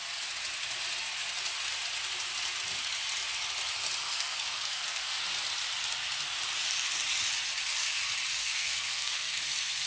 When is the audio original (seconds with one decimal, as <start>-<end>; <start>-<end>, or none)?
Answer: 0.0-4.0; 5.2-8.4; 9.4-9.9